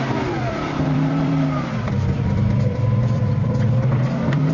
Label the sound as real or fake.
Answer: fake